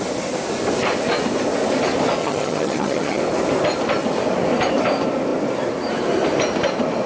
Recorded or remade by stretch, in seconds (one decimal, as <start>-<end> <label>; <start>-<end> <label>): 0.0-2.2 recorded; 2.2-3.2 remade; 3.2-7.1 recorded